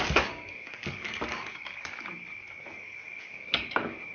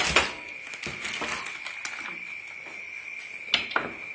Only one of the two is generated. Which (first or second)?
first